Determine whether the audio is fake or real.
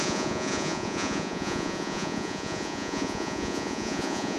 fake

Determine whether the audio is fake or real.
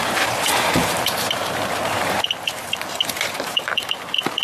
fake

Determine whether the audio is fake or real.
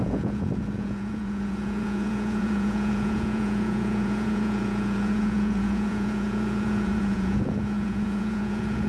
fake